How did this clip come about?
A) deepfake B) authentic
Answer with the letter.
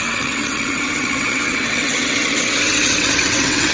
A